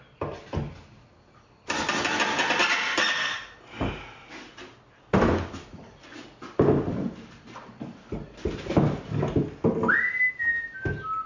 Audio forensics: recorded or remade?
recorded